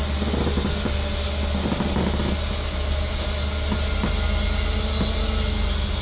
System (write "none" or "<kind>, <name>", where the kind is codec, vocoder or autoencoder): none